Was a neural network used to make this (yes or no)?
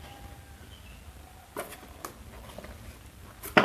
no